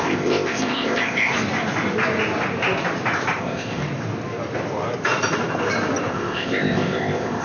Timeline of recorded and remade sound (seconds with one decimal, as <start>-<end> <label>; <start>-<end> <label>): 0.0-1.3 remade; 1.3-3.4 recorded; 3.4-3.8 remade; 3.8-6.1 recorded; 6.1-7.4 remade